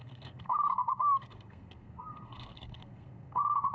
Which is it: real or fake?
fake